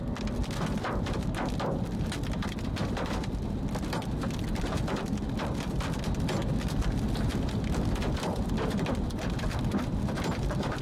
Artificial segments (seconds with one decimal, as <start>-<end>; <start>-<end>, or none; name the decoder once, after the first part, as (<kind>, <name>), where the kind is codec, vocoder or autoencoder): 7.3-10.8 (vocoder, BigVGAN v2)

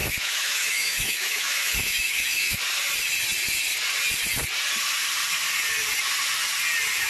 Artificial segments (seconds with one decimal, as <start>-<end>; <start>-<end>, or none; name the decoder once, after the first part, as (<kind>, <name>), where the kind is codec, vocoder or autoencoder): 0.0-2.6 (autoencoder, DAC-VAE)

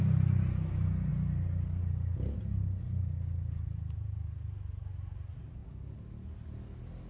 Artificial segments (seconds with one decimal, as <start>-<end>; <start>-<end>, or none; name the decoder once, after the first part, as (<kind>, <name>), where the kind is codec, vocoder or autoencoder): none

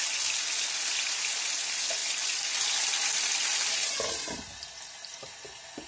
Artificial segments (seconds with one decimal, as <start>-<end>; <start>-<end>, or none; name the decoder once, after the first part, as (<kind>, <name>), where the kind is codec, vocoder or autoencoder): none

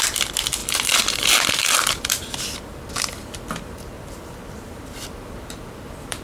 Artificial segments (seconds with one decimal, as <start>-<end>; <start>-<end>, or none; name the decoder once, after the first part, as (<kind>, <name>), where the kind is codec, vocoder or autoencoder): 0.0-6.2 (vocoder, BigVGAN v2)

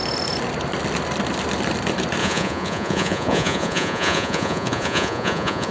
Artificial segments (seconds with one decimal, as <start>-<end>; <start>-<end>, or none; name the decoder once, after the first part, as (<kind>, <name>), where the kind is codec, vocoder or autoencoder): 2.2-5.7 (vocoder, Vocos)

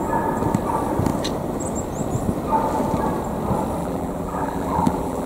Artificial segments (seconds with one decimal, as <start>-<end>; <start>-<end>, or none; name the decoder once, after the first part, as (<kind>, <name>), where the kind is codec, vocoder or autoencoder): 3.8-5.3 (vocoder, BigVGAN v2)

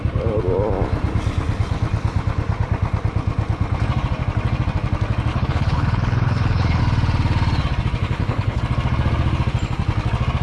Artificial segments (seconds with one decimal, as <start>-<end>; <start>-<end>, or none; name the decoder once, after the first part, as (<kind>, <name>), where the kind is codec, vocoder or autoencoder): 5.3-6.8 (codec, HILCodec); 8.0-8.6